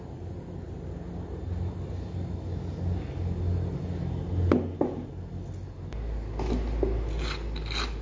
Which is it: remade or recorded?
recorded